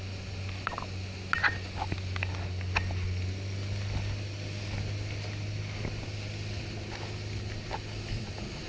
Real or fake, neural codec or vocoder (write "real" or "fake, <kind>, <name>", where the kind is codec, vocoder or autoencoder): real